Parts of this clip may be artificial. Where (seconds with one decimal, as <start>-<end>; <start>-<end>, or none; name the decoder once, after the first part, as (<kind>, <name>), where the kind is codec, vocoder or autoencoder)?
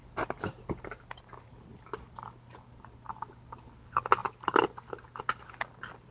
0.0-3.1 (vocoder, BigVGAN v2)